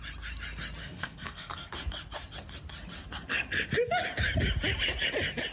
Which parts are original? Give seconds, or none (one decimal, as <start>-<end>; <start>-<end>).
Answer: 0.0-0.8; 1.7-5.5